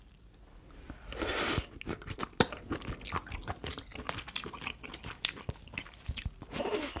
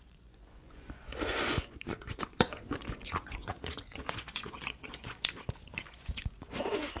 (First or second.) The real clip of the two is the first